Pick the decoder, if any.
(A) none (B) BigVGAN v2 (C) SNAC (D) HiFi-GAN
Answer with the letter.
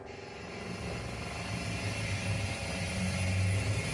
A